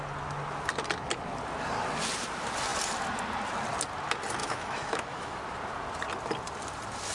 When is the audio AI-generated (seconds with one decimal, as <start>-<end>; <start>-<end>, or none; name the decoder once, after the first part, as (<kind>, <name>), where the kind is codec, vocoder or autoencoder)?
4.4-5.4 (autoencoder, DAC-VAE)